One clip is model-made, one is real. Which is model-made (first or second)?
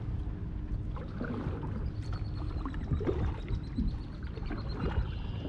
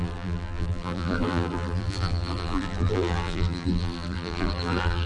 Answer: second